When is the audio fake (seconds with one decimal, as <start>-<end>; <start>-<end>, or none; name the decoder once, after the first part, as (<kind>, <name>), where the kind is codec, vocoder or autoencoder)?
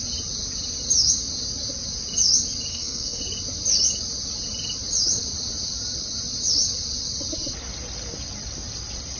2.7-3.2 (codec, SNAC)